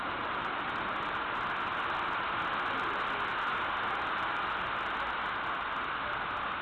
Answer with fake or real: real